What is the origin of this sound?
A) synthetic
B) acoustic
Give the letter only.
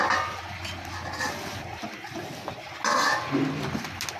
B